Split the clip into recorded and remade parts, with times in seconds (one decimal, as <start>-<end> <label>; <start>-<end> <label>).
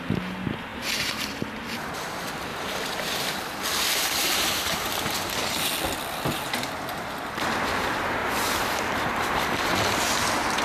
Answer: 0.0-0.7 recorded; 0.7-1.3 remade; 1.3-2.5 recorded; 2.5-5.3 remade; 5.3-8.2 recorded; 8.2-9.4 remade; 9.4-10.6 recorded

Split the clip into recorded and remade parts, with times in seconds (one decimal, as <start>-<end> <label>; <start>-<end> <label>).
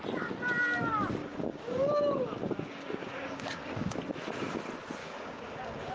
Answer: 0.0-1.2 recorded; 1.2-4.0 remade; 4.0-5.0 recorded; 5.0-5.9 remade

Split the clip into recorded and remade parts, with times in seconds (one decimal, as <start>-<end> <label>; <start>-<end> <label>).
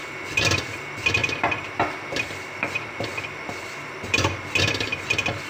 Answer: 0.0-5.5 remade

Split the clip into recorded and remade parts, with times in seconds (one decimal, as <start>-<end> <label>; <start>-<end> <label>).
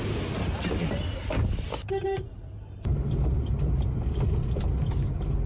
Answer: 0.0-1.2 recorded; 1.2-2.4 remade; 2.4-5.5 recorded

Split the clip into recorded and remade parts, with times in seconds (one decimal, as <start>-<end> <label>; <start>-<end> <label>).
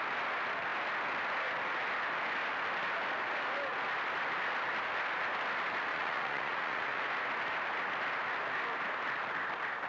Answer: 0.0-5.9 recorded; 5.9-7.0 remade; 7.0-9.9 recorded